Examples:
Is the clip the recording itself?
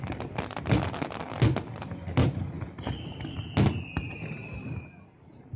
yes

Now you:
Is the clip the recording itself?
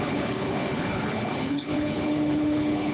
no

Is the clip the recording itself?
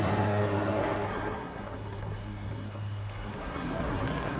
no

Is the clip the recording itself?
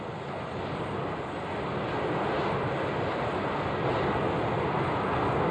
yes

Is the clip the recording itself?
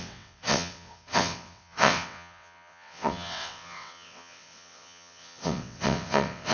no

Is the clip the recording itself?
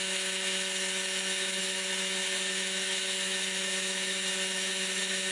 no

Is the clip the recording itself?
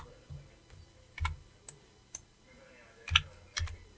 yes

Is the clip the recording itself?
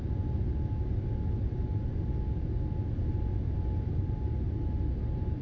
yes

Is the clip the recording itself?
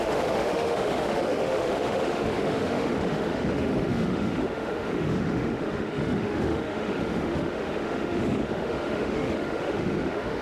no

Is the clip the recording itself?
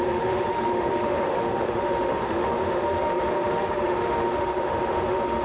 no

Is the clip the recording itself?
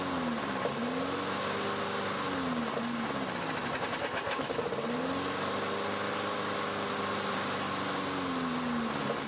yes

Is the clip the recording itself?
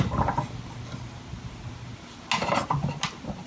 yes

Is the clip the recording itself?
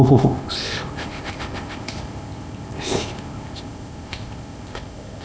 no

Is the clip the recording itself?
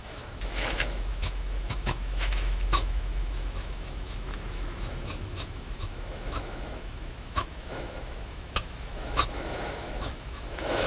no